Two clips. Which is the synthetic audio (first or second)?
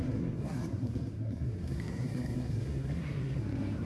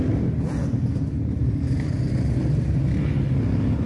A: first